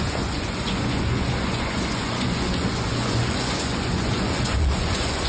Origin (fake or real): fake